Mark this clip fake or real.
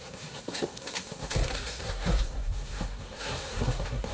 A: fake